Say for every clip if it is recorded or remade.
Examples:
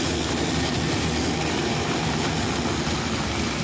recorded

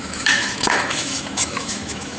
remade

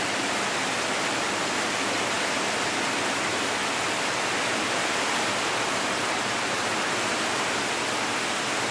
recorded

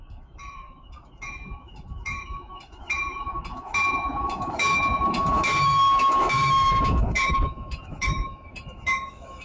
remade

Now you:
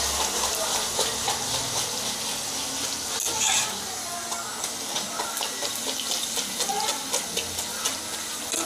recorded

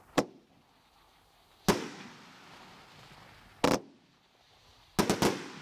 recorded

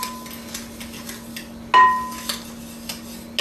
recorded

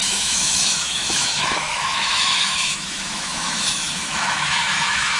remade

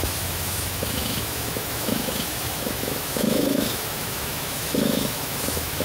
remade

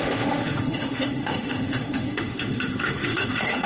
remade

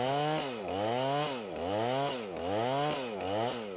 recorded